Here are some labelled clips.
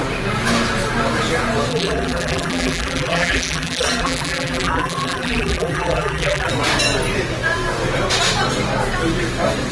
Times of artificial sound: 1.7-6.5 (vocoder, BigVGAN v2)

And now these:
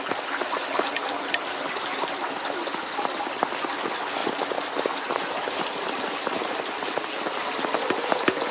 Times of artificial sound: none

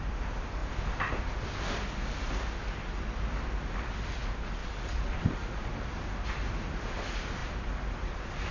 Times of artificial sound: 4.6-6.5 (vocoder, BigVGAN v2); 7.4-8.1

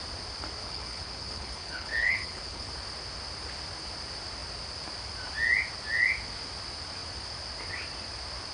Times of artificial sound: 0.6-2.7 (codec, HILCodec)

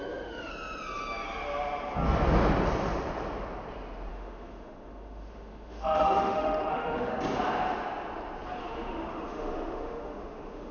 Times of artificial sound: 0.0-0.5 (autoencoder, DAC-VAE); 4.1-7.1; 8.6-10.7

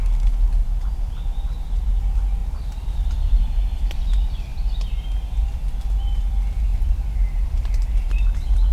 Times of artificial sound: 0.6-2.0 (vocoder, BigVGAN v2); 2.4-4.1; 4.5-6.3; 6.7-8.7

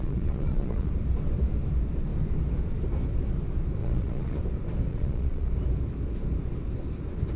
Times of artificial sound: 0.0-0.9 (vocoder, Vocos); 3.8-4.4; 4.9-5.5

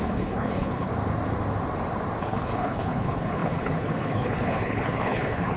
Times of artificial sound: 0.0-0.9 (codec, HILCodec); 2.2-5.6